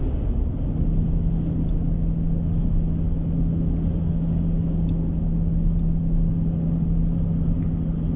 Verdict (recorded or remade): recorded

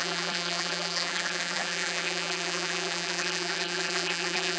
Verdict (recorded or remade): remade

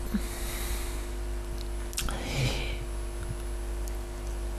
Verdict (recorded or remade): recorded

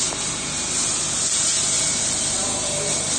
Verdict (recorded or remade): recorded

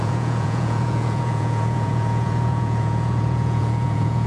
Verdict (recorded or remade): remade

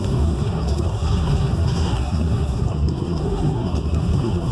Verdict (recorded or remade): remade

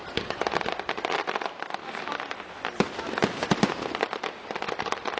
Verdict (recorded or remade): recorded